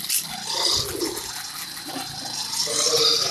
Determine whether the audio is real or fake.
real